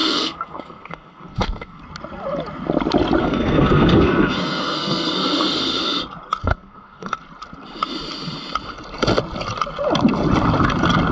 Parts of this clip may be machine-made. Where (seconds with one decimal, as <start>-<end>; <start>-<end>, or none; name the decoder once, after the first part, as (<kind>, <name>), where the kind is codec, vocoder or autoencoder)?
0.0-1.8 (codec, SNAC); 3.2-5.8; 6.4-7.2